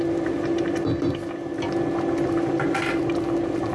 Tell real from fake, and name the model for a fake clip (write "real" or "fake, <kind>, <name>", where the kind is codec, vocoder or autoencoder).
real